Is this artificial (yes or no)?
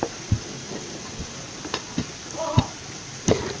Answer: no